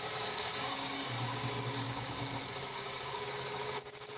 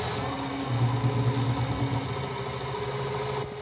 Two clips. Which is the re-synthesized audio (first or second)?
first